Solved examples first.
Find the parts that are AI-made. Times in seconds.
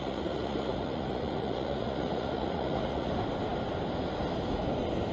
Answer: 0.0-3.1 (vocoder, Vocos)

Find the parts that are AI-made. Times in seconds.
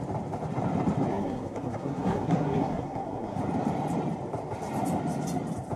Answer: 1.1-3.4 (codec, SNAC)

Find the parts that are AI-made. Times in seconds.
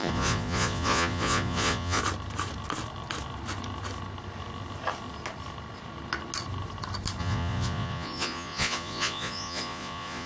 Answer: 0.0-2.0 (vocoder, Vocos); 7.2-10.3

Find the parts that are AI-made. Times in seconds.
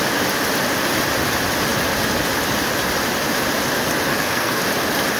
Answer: 4.1-4.6 (codec, SNAC)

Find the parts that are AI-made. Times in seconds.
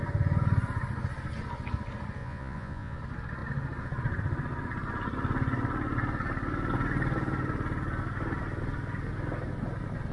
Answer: 2.2-3.0 (vocoder, Vocos)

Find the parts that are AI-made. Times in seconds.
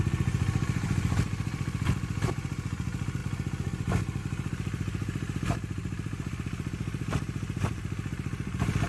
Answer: 0.0-8.9 (vocoder, BigVGAN v2)